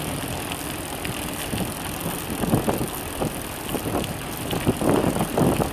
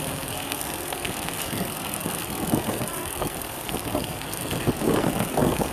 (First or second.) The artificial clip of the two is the second